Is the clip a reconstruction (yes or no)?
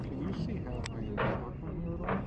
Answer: no